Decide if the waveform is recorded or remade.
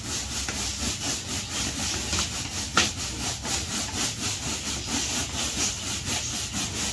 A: recorded